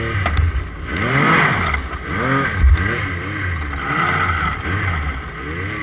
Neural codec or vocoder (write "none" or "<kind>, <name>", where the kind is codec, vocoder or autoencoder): none